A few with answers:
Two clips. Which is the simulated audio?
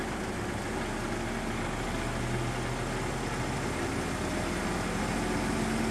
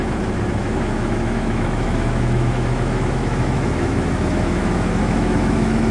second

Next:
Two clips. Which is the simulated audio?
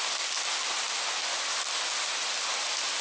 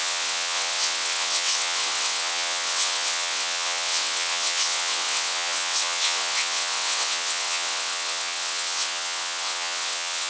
second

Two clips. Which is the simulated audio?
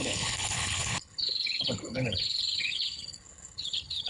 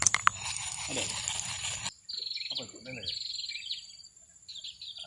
first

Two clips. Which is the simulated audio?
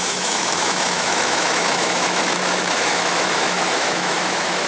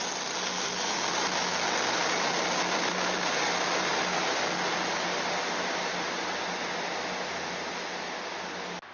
first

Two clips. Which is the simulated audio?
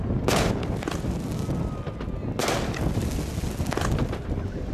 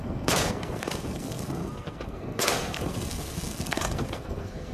second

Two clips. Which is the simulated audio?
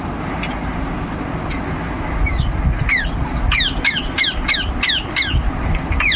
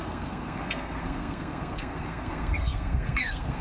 second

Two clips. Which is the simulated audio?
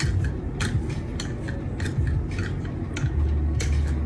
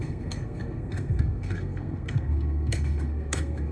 second